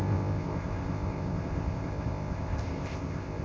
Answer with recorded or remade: remade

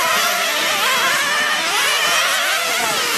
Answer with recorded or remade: recorded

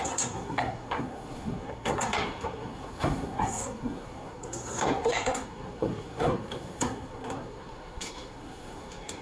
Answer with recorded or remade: remade